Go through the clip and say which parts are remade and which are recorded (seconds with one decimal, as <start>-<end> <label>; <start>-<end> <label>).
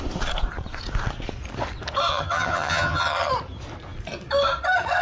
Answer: 0.0-2.1 recorded; 2.1-3.3 remade; 3.3-5.0 recorded